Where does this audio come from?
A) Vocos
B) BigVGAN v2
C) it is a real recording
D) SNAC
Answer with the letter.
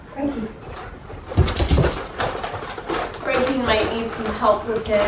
C